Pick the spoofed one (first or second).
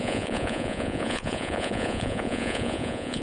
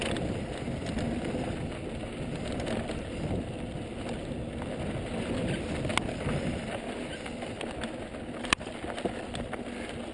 first